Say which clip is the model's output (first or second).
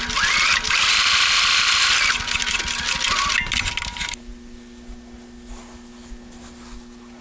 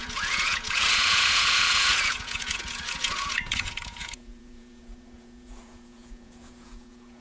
second